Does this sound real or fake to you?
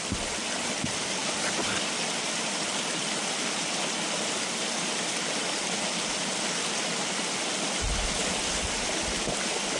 real